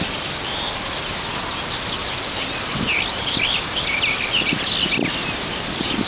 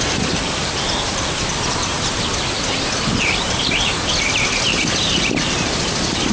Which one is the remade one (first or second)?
second